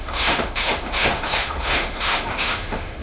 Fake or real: fake